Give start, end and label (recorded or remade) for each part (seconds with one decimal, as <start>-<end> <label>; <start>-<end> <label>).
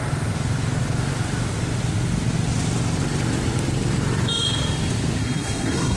0.0-5.2 recorded; 5.2-6.0 remade